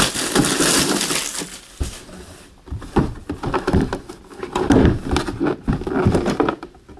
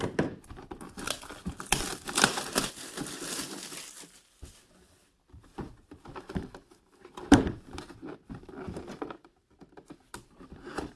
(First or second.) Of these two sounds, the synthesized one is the second